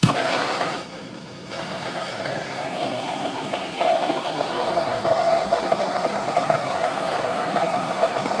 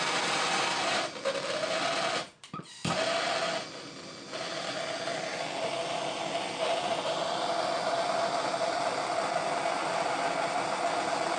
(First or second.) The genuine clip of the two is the second